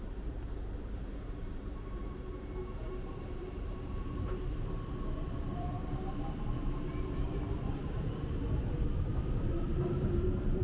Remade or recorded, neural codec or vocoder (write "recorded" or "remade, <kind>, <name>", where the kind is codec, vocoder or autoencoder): remade, vocoder, BigVGAN v2